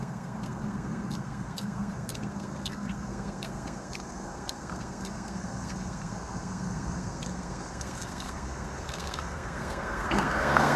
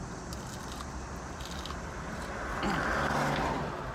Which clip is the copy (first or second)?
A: first